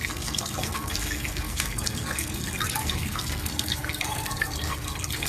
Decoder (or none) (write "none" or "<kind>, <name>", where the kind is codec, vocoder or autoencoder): codec, SNAC